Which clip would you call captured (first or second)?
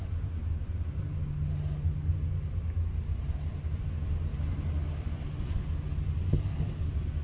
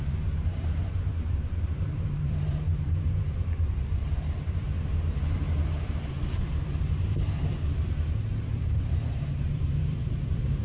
first